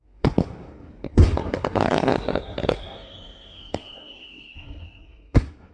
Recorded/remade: remade